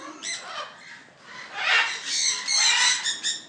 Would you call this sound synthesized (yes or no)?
no